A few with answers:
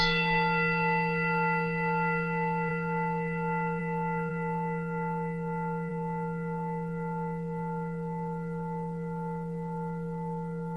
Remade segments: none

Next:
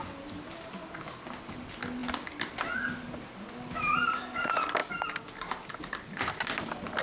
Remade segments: none

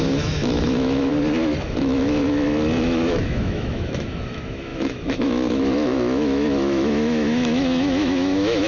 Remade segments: 0.0-1.1 (autoencoder, DAC-VAE); 1.6-2.2; 2.8-8.7